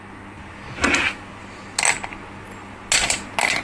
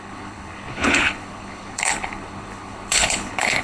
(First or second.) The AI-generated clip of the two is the second